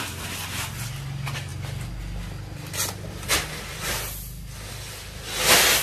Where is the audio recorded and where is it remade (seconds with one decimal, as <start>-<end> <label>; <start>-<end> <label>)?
0.0-5.8 recorded